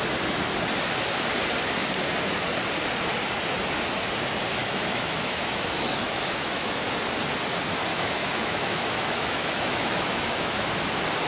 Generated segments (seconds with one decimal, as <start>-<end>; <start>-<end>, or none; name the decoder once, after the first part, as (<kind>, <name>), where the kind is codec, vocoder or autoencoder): 4.6-6.8 (autoencoder, DAC-VAE); 7.9-10.8